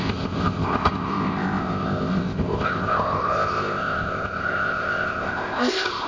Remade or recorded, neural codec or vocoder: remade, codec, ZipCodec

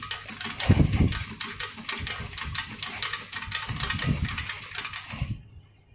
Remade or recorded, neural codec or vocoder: recorded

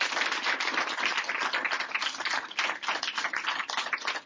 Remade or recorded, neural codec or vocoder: recorded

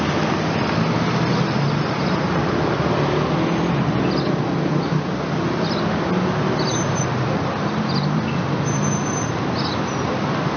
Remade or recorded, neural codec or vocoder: recorded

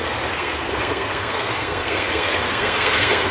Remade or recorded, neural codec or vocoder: remade, codec, SNAC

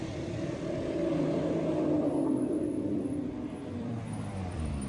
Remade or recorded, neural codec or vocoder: remade, vocoder, BigVGAN v2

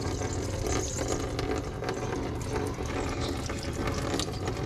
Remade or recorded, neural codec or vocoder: recorded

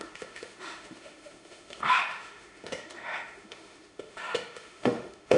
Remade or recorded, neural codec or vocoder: remade, autoencoder, DAC-VAE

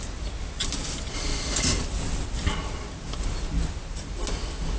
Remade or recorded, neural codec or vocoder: recorded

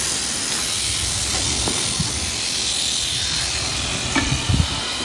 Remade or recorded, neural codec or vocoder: recorded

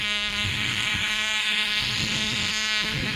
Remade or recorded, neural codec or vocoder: remade, autoencoder, DAC-VAE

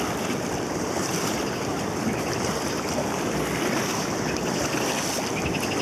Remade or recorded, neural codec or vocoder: recorded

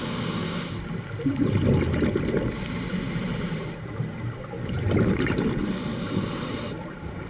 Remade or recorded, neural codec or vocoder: recorded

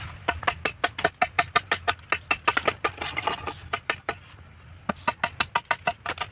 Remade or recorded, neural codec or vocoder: recorded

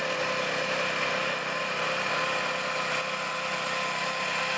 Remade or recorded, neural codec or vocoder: recorded